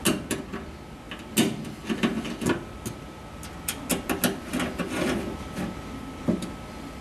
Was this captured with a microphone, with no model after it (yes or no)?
yes